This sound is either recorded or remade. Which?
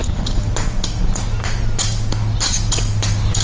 recorded